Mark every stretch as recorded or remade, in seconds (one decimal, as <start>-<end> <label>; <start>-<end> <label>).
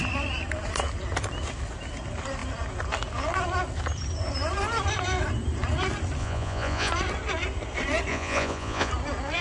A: 0.0-6.2 recorded; 6.2-6.9 remade; 6.9-8.1 recorded; 8.1-8.9 remade; 8.9-9.4 recorded